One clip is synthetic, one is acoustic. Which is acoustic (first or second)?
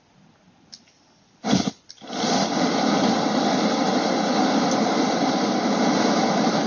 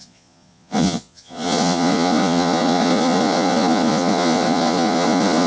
first